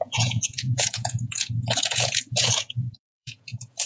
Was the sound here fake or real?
fake